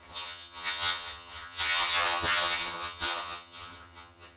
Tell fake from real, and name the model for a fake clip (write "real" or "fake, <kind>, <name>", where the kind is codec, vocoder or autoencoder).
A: fake, vocoder, HiFi-GAN